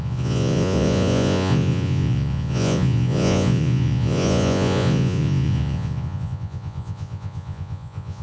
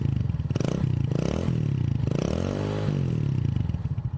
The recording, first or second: second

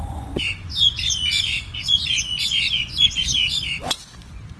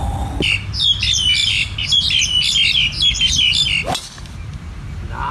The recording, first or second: second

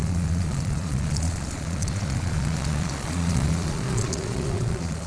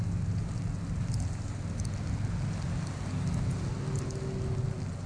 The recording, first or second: second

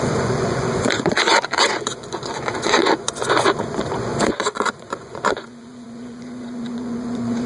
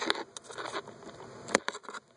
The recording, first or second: second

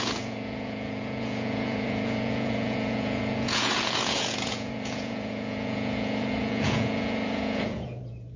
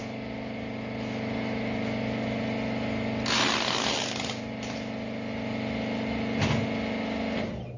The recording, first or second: second